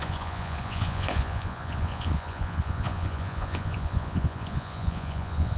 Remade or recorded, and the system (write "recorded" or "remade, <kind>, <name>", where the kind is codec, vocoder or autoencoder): remade, vocoder, Vocos